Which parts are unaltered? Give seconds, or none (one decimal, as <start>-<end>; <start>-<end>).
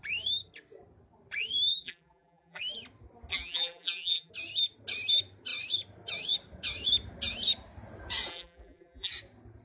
0.0-1.7; 2.6-3.3; 4.3-8.3; 9.1-9.6